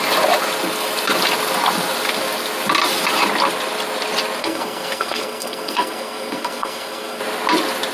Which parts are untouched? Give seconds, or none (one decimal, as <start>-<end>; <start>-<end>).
0.0-4.4; 7.2-7.9